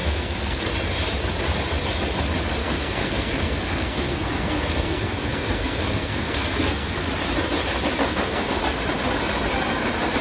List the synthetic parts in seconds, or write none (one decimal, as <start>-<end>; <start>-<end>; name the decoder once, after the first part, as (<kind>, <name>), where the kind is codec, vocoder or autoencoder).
0.0-0.7 (codec, SNAC); 2.6-7.1; 8.0-8.6